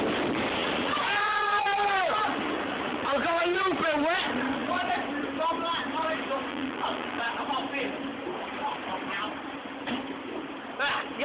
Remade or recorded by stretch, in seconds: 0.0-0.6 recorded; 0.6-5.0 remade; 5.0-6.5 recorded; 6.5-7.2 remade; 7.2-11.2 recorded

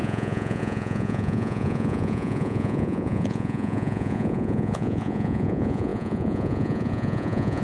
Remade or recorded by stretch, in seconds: 0.0-7.6 remade

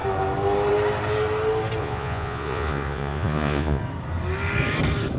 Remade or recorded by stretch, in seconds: 0.0-1.8 recorded; 1.8-3.8 remade; 3.8-5.2 recorded

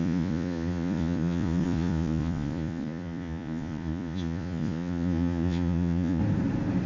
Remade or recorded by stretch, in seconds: 0.0-6.2 remade; 6.2-6.9 recorded

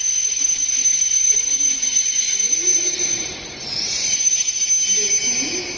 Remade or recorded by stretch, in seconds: 0.0-1.1 recorded; 1.1-4.6 remade; 4.6-5.8 recorded

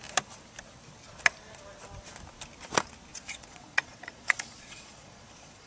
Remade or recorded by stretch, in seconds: 0.0-3.1 recorded; 3.1-5.7 remade

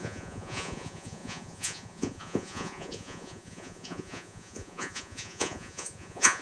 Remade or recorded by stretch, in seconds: 0.0-6.4 remade

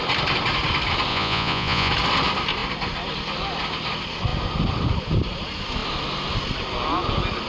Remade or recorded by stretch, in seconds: 0.0-1.1 recorded; 1.1-1.9 remade; 1.9-7.5 recorded